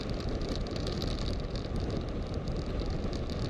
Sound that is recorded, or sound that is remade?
remade